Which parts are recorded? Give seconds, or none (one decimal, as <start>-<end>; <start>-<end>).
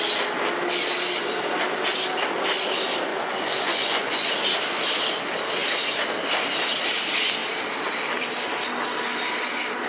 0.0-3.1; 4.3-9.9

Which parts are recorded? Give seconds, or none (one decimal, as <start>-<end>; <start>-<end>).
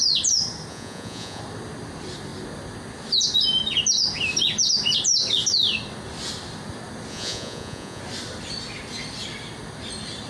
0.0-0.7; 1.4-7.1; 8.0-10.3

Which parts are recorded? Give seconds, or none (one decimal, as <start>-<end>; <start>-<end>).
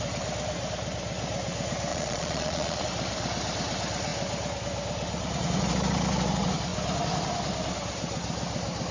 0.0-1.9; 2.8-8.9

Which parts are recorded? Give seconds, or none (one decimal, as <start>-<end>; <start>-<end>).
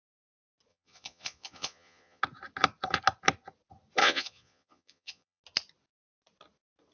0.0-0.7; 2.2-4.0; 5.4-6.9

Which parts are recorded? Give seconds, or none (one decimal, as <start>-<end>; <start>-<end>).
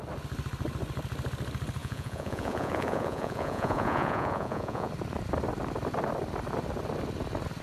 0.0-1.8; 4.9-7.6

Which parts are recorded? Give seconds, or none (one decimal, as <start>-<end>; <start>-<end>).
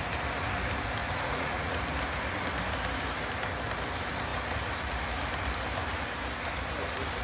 0.0-1.0; 1.8-7.2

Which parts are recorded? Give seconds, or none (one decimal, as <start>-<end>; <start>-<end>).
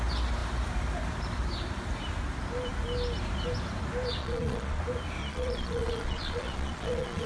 0.0-4.2; 4.8-5.2